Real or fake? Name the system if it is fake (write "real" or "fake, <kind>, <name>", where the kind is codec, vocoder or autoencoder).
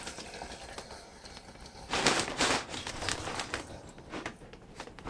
real